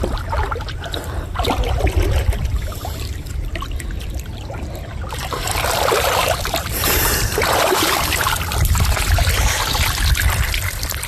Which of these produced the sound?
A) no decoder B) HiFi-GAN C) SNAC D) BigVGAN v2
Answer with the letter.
D